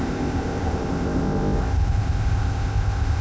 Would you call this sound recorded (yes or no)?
no